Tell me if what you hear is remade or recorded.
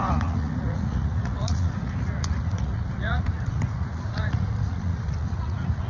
remade